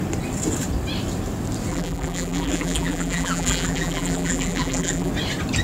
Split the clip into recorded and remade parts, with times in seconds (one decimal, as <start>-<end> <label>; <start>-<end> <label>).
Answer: 0.0-1.7 recorded; 1.7-5.1 remade; 5.1-5.6 recorded